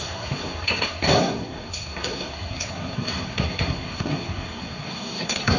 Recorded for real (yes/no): no